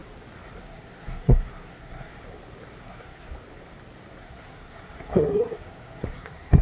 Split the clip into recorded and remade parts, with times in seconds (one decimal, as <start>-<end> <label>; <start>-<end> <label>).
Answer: 0.0-0.6 recorded; 0.6-2.1 remade; 2.1-2.8 recorded; 2.8-3.3 remade; 3.3-4.2 recorded; 4.2-6.6 remade